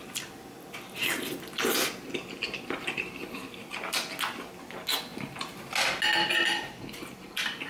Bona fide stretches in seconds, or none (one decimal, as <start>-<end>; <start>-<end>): 0.0-7.7